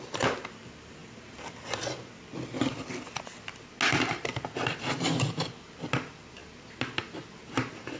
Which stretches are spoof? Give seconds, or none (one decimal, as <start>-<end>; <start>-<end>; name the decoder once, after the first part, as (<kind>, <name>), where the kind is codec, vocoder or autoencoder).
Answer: none